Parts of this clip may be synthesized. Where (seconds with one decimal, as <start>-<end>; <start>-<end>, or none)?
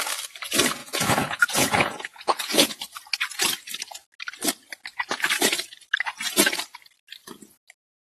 0.8-2.8